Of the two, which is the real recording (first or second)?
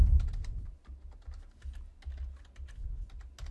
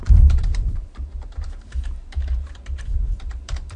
first